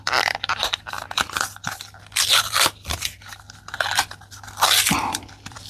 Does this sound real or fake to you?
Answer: fake